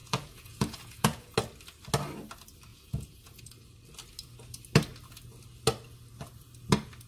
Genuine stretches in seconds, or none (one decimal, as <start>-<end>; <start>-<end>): 1.3-2.7; 3.4-7.1